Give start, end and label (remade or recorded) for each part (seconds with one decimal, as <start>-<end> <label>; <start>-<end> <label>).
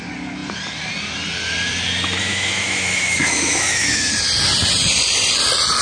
0.0-2.2 recorded; 2.2-4.1 remade; 4.1-5.8 recorded